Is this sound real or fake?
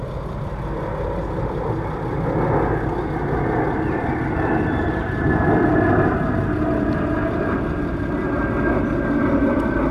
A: real